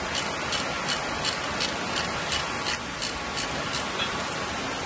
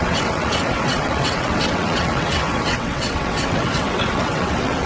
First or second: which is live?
first